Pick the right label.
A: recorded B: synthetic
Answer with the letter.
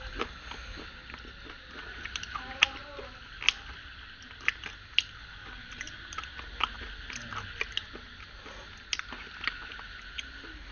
A